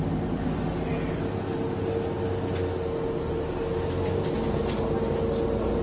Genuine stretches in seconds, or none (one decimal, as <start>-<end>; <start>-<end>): 0.0-5.8